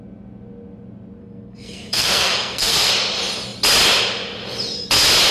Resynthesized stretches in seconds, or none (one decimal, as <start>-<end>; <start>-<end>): 1.2-2.9

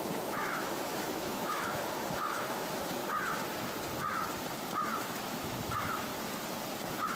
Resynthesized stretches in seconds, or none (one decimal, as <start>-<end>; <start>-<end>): 0.0-3.0; 5.0-6.1

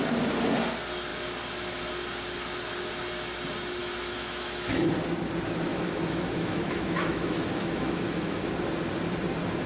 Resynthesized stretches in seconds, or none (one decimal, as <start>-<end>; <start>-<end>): 3.8-4.9; 5.7-8.5

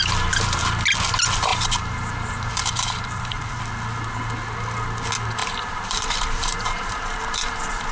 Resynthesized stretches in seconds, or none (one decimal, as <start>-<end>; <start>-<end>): 1.5-3.6; 5.4-7.9

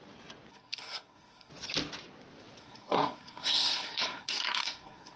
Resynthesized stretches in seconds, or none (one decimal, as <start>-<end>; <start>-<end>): 0.5-1.5; 2.6-5.2

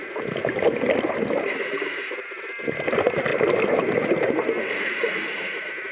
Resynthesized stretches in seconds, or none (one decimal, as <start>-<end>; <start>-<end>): none

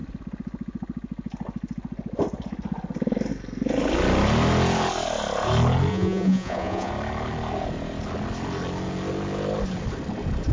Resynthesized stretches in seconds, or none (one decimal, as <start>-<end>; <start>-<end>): 5.9-6.9